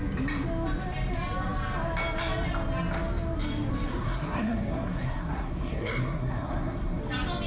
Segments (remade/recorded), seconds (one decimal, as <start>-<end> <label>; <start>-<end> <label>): 0.0-3.9 recorded; 3.9-7.0 remade; 7.0-7.5 recorded